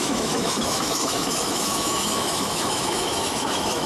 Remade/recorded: remade